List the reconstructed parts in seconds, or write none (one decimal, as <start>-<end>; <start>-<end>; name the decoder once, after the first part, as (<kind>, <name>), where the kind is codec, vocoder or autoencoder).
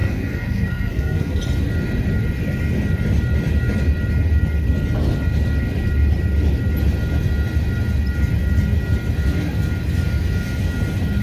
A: 0.0-1.4 (codec, SNAC)